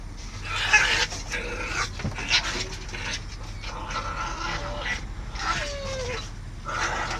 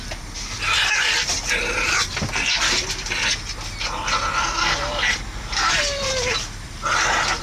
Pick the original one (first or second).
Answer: first